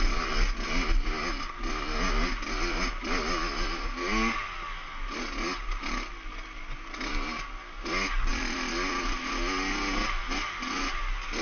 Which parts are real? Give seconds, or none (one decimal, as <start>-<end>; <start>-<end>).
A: 0.0-8.3; 9.2-11.4

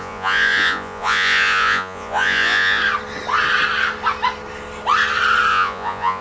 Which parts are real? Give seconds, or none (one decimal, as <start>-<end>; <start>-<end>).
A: 2.8-5.5